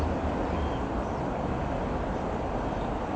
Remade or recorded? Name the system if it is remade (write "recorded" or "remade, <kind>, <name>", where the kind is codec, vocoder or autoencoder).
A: remade, vocoder, BigVGAN v2